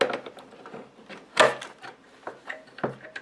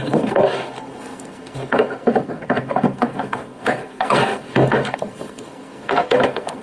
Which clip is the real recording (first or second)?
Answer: first